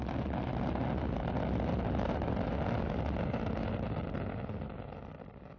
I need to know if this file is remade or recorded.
recorded